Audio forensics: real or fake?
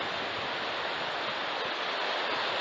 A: real